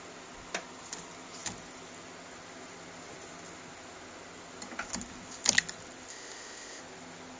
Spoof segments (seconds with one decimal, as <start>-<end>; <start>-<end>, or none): 6.1-6.8